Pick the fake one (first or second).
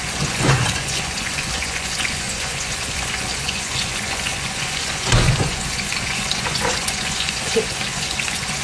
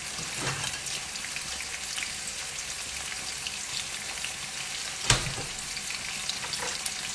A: first